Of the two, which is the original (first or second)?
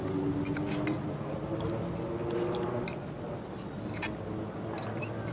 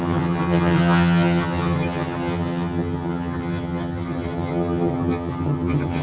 first